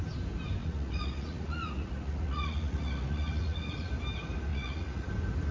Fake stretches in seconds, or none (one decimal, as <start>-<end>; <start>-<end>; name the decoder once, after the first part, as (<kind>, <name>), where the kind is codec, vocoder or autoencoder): 0.6-3.9 (vocoder, Vocos); 4.5-5.1

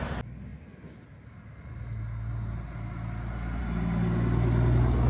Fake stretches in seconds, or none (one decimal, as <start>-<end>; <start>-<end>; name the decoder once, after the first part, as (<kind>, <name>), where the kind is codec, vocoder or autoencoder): none

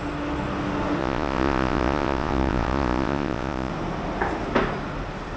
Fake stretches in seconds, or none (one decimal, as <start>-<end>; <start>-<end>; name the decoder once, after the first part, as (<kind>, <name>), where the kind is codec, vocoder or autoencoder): 1.0-3.7 (vocoder, Vocos)

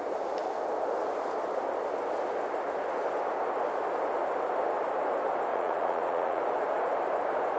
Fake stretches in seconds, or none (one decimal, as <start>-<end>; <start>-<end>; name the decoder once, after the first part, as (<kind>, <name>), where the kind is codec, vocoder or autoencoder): 5.5-6.4 (vocoder, Vocos)

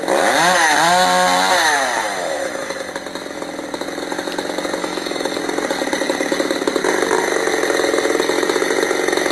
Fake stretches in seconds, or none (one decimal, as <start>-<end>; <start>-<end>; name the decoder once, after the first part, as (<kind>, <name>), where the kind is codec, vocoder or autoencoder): 2.0-2.9 (autoencoder, DAC-VAE); 4.8-5.4

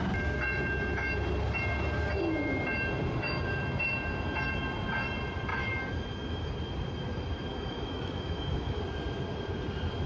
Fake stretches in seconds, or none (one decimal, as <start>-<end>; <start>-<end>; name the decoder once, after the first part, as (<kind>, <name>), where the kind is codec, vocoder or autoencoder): 5.5-6.5 (autoencoder, DAC-VAE); 7.5-8.8